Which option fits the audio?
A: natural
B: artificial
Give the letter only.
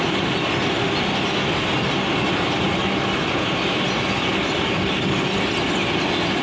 A